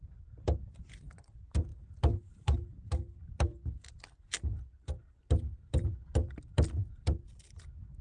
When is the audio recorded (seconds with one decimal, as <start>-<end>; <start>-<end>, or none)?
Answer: 0.0-8.0